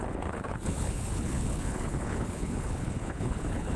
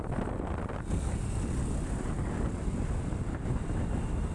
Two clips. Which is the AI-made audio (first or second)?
first